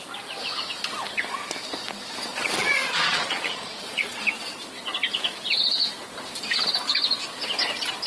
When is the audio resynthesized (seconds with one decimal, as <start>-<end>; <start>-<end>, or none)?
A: 2.3-4.2